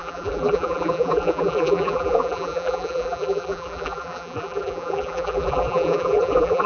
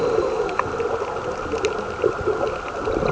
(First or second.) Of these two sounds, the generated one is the first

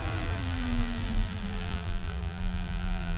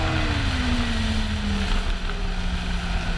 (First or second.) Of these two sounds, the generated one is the first